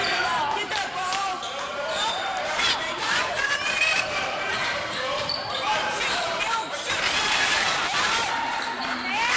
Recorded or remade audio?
remade